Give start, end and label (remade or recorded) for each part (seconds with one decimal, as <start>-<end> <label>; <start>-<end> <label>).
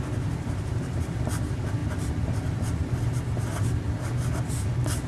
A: 0.0-5.1 recorded